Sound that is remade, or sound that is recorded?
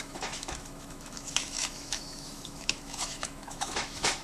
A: remade